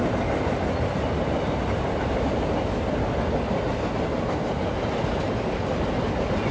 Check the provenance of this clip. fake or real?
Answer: real